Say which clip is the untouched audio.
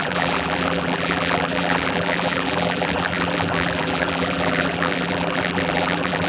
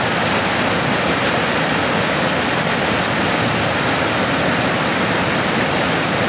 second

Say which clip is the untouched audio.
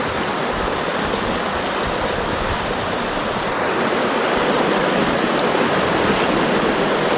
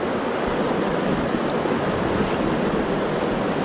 second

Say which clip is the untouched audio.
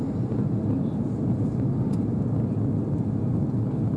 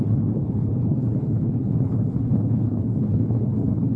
first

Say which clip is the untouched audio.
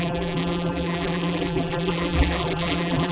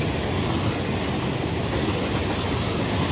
second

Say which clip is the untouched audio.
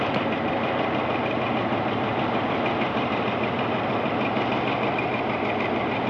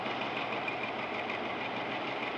first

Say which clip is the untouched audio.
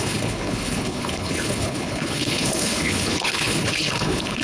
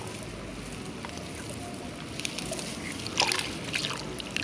second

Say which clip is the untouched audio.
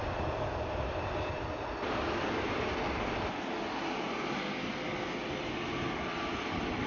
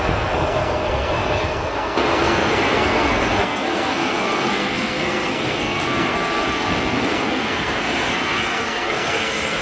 first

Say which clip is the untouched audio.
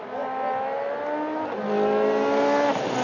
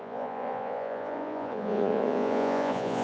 first